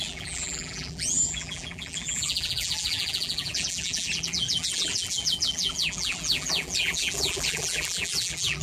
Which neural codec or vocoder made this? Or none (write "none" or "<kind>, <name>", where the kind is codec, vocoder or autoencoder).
vocoder, BigVGAN v2